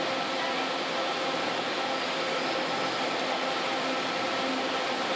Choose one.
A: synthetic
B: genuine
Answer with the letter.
B